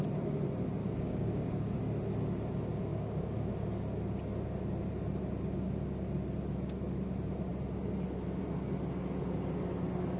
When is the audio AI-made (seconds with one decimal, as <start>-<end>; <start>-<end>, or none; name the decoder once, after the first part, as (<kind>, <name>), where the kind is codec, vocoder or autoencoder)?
0.8-1.8 (codec, DAC); 2.9-3.5